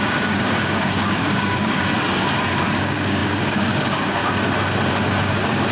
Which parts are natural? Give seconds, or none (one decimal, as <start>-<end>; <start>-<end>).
1.9-2.8; 4.2-4.9